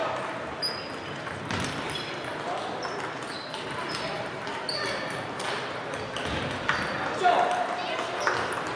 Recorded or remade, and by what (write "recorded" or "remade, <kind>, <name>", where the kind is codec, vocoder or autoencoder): recorded